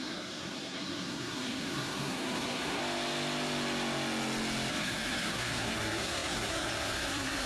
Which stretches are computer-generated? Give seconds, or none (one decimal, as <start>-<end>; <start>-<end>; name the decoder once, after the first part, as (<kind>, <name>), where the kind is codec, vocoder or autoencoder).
0.0-2.8 (codec, SNAC); 4.7-7.5

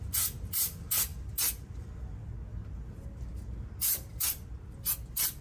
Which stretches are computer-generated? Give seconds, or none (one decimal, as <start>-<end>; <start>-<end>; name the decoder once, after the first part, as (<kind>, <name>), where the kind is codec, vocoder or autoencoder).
none